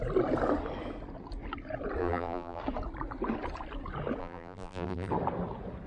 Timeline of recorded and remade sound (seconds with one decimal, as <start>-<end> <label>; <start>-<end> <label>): 0.0-2.0 recorded; 2.0-2.6 remade; 2.6-4.2 recorded; 4.2-5.1 remade; 5.1-5.9 recorded